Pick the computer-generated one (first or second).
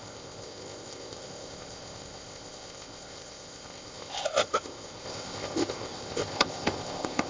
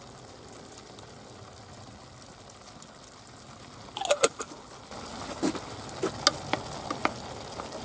first